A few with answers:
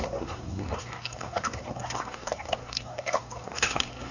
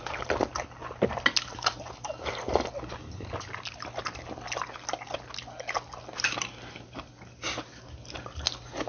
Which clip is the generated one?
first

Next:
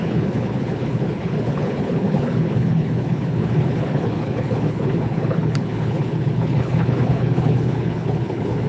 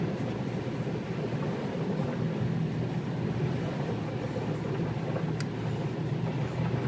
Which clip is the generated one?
first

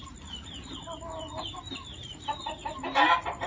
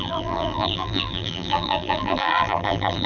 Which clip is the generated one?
second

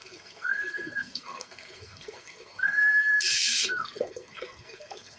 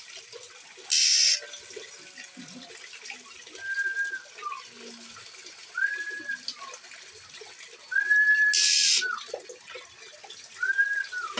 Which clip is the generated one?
first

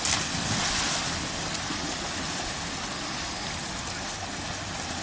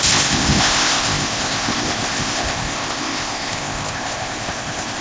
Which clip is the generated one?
second